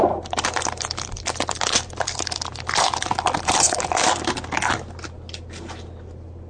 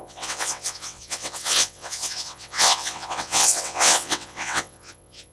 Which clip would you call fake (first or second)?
second